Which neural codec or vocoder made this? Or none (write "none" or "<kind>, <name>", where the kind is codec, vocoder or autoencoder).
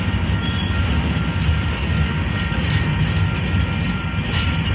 none